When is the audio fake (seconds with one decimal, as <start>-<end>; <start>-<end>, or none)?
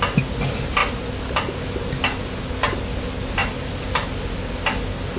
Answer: 0.8-1.6; 3.4-4.8